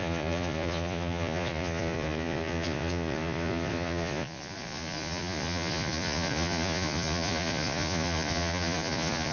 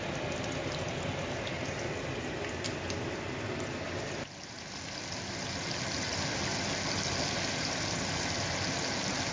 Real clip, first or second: second